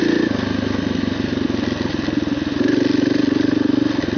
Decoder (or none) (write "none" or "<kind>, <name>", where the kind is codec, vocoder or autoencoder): none